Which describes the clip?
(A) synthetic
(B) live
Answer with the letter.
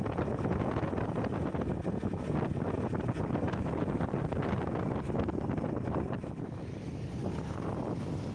B